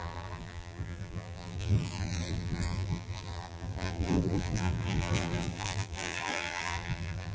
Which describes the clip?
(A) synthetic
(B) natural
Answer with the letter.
A